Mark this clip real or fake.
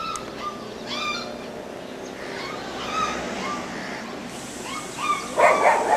real